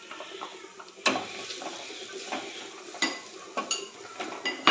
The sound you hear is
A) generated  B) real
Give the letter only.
B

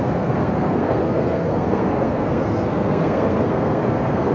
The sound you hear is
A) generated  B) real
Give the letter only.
A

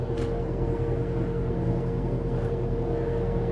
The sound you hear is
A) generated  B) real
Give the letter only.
A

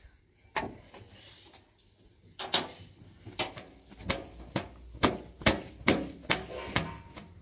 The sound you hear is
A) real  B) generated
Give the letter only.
A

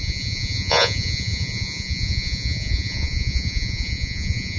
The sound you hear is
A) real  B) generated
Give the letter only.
B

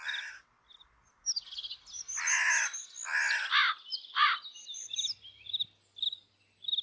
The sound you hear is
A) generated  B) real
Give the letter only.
B